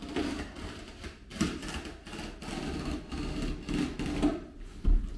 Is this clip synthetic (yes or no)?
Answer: no